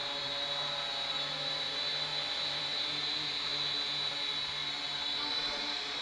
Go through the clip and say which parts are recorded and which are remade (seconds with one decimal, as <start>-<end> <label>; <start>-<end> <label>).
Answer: 0.0-2.1 remade; 2.1-2.6 recorded; 2.6-3.5 remade; 3.5-5.3 recorded; 5.3-6.0 remade